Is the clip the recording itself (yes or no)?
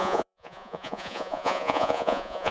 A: no